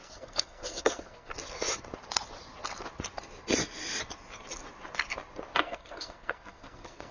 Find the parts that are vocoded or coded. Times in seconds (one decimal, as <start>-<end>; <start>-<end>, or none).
0.0-1.3; 5.6-7.1